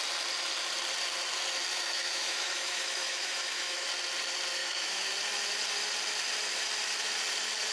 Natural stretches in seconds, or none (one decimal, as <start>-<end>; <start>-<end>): 0.0-1.7; 3.9-4.6; 5.1-7.7